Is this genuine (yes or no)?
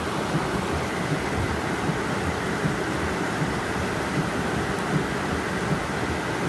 yes